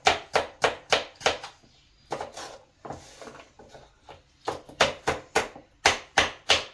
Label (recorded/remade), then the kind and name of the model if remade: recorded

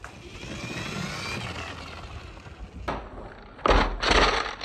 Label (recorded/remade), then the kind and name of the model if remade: recorded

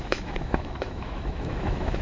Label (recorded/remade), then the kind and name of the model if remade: remade, autoencoder, DAC-VAE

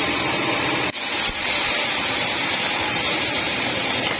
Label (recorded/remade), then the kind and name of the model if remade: remade, vocoder, BigVGAN v2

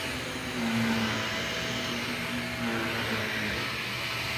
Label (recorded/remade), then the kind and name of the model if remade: recorded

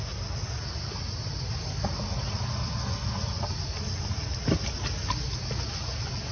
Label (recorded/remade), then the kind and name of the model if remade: recorded